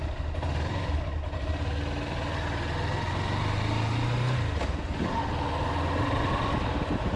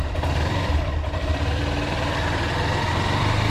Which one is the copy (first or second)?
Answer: second